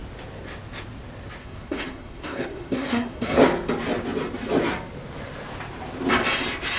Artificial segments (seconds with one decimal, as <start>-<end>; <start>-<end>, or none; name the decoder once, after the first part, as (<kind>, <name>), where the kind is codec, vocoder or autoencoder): 1.4-3.4 (codec, SNAC)